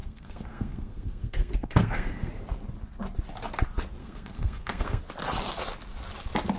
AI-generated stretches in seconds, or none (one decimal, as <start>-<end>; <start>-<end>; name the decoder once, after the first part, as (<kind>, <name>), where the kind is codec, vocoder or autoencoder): 0.0-2.3 (codec, SNAC); 4.0-5.0